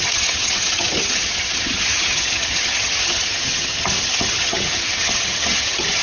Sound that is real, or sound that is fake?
fake